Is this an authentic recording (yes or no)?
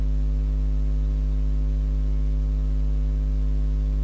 yes